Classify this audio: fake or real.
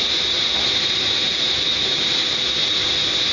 real